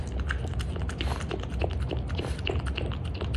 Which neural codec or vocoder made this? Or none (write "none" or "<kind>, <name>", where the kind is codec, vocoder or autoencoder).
none